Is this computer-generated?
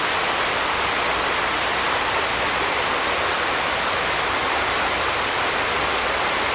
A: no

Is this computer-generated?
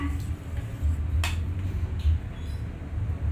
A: no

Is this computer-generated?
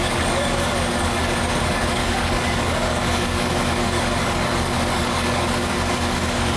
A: yes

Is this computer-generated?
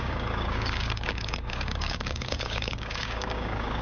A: yes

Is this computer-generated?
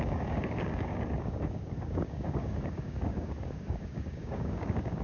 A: yes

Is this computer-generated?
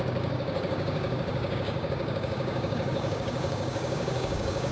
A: yes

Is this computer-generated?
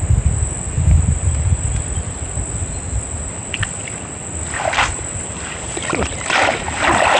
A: no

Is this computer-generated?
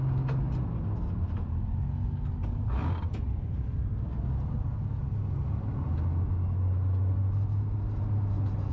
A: no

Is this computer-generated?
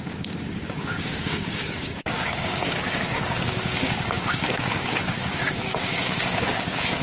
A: yes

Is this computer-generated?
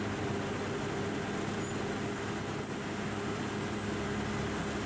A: no